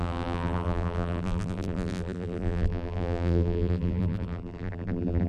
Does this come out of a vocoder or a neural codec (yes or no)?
yes